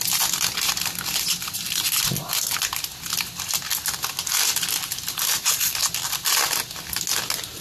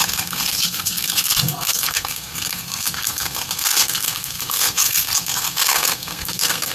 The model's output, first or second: second